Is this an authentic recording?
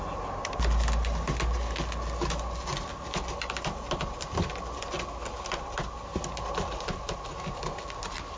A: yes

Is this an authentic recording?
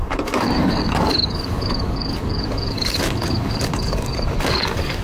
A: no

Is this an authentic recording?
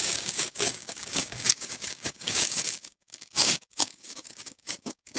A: no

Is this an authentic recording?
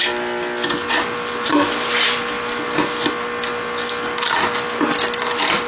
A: yes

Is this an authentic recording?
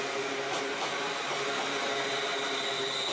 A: yes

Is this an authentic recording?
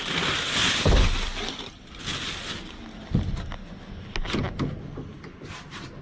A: yes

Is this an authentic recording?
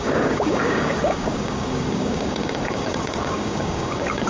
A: no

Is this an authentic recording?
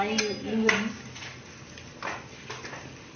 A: yes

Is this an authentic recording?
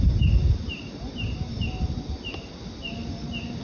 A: yes